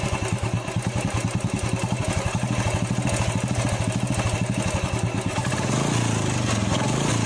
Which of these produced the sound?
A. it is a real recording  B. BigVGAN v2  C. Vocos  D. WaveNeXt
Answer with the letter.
A